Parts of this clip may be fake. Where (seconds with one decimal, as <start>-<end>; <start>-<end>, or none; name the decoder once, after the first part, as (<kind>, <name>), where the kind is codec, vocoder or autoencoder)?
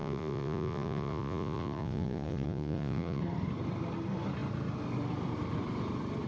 0.0-3.2 (vocoder, Vocos)